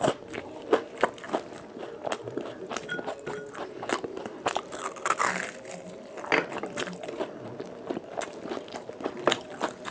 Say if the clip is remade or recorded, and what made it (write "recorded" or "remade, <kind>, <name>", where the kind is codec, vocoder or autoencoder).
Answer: recorded